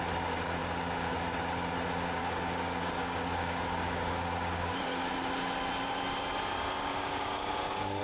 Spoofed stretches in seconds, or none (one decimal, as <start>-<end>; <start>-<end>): 2.2-5.1; 6.8-8.0